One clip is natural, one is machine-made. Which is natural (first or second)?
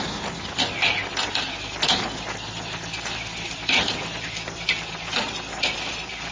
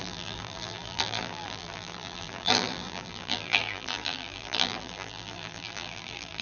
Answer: first